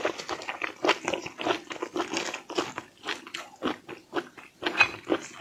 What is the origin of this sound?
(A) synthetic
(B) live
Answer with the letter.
B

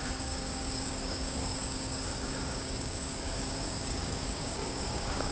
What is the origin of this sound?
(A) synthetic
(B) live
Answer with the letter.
A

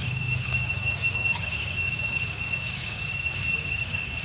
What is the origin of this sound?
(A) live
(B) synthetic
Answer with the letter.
B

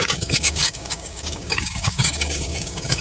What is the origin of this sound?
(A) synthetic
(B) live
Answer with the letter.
A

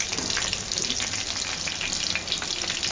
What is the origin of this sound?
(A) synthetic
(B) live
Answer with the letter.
B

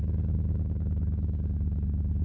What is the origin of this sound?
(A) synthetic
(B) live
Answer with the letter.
A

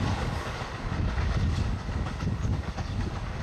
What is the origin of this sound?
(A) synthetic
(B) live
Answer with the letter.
A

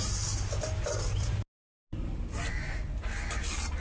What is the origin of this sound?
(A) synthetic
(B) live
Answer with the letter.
B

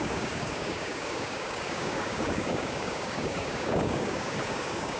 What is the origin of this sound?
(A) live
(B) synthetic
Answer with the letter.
B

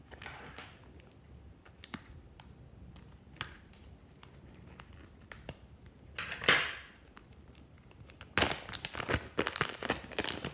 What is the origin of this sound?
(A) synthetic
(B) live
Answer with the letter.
B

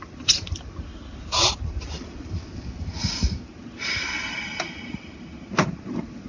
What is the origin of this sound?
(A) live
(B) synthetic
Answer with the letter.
A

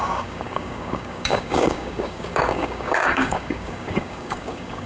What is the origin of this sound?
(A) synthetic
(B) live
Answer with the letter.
A